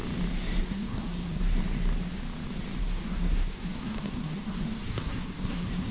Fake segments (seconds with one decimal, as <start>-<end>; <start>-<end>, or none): 0.6-1.6; 2.8-5.9